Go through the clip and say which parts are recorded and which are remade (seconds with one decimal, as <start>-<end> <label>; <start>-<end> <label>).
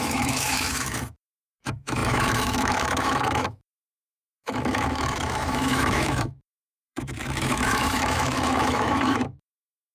0.0-9.9 remade